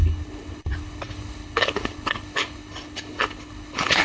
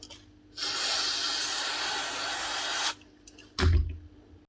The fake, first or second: first